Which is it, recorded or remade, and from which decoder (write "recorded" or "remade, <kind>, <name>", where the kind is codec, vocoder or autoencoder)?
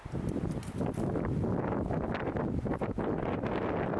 recorded